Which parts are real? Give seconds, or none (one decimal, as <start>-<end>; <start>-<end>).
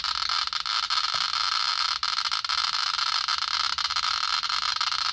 0.0-5.1